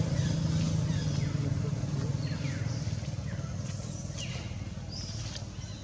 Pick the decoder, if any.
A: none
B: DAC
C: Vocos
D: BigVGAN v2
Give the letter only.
A